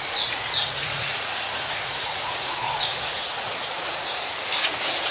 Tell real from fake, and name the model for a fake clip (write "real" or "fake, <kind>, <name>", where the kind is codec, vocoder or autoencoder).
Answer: fake, vocoder, Vocos